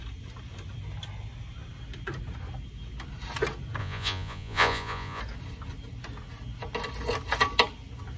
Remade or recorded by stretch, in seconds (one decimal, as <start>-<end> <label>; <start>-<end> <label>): 0.0-3.8 recorded; 3.8-5.2 remade; 5.2-8.2 recorded